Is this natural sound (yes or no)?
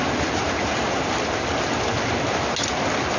yes